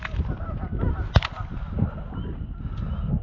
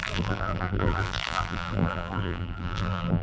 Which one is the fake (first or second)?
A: second